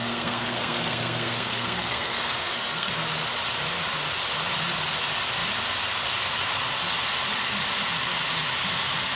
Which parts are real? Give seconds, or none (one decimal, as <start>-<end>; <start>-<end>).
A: 2.9-9.2